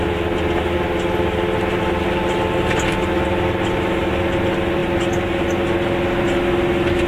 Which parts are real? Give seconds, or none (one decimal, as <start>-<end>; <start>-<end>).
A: 0.0-7.1